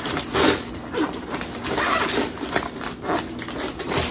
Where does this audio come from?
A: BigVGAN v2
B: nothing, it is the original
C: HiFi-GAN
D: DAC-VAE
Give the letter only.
A